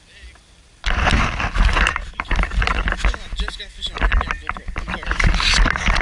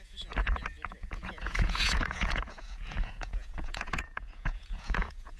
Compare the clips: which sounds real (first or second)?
first